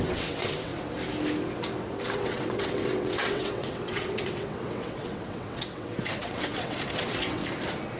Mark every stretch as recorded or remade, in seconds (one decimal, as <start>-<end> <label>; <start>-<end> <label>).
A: 0.0-0.7 remade; 0.7-2.1 recorded; 2.1-7.4 remade; 7.4-8.0 recorded